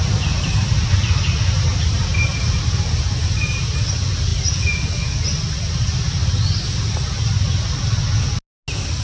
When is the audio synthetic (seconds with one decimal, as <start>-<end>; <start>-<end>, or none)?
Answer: none